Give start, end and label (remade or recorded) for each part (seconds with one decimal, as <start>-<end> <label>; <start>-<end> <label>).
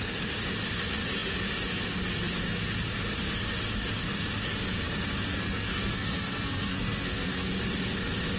0.0-5.3 recorded; 5.3-7.5 remade; 7.5-8.4 recorded